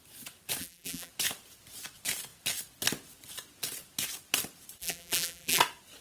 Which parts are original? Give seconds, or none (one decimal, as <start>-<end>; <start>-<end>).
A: 0.0-0.6; 1.1-4.8; 5.6-6.0